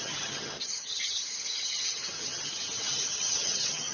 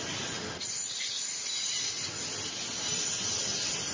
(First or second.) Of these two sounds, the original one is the second